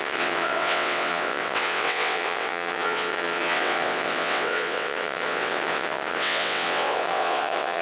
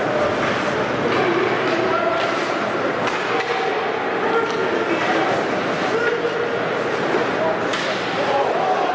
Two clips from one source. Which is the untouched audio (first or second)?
second